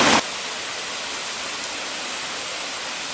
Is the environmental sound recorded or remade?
recorded